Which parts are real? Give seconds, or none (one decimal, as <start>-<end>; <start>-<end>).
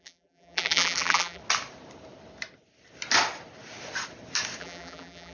1.4-4.6